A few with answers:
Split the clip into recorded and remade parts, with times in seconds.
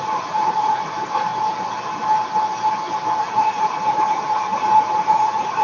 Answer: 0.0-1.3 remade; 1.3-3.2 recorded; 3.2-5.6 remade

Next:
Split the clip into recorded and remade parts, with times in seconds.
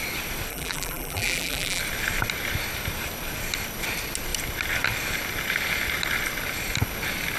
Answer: 0.0-0.5 recorded; 0.5-1.8 remade; 1.8-7.4 recorded